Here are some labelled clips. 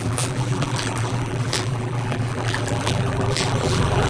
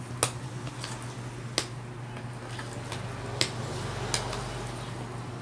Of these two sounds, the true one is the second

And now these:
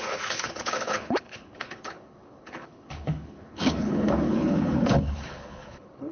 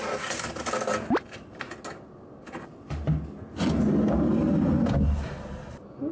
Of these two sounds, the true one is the second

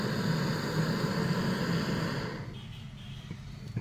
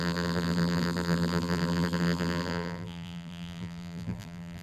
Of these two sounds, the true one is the first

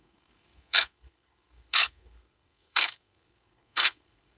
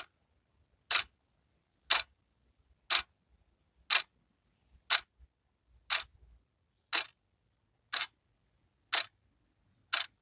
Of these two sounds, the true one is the second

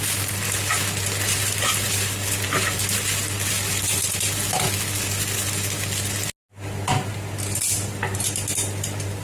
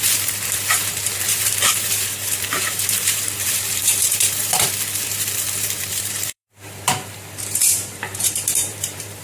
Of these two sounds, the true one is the first